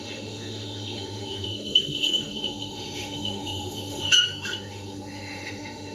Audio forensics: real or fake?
fake